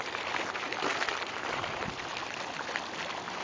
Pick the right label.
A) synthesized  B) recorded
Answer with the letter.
A